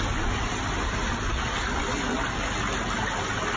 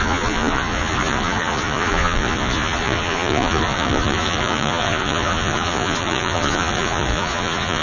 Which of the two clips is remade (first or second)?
second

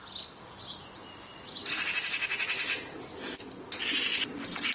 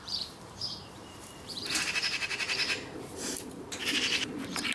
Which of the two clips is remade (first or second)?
second